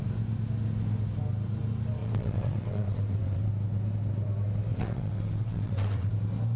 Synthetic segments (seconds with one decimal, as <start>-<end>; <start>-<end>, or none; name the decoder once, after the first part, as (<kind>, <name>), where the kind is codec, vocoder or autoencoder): 2.0-3.5 (vocoder, WaveNeXt); 4.7-6.1